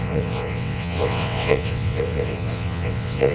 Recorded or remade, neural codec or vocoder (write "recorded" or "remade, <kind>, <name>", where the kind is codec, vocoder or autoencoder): remade, vocoder, WaveNeXt